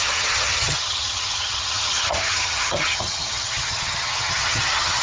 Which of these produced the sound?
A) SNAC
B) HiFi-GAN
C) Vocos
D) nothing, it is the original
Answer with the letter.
B